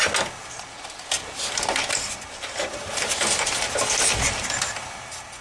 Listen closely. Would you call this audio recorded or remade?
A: recorded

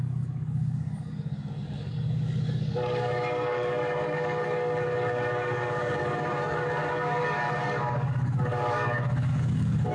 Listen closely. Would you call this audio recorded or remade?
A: remade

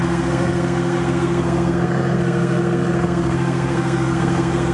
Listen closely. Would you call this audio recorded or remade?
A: remade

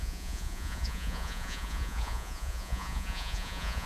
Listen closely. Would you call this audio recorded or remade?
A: remade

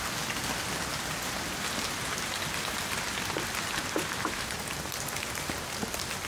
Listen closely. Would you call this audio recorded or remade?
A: recorded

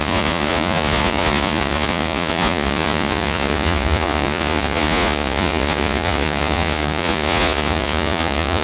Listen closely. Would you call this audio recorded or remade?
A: remade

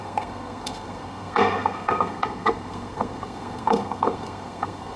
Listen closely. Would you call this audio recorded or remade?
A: remade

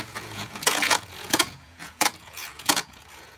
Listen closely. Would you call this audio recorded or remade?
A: remade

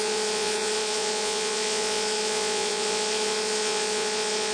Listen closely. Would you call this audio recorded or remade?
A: remade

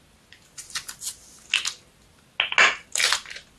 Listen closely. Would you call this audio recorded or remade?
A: recorded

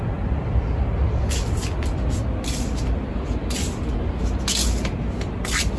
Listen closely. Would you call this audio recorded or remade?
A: recorded